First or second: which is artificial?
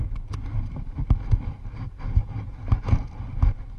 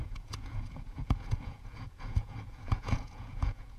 second